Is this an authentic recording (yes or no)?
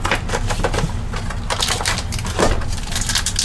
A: yes